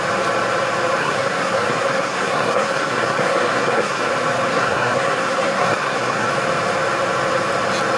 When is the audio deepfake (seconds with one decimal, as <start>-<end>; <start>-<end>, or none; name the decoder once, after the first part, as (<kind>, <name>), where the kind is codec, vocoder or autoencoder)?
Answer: 1.0-4.1 (codec, SNAC); 4.5-6.3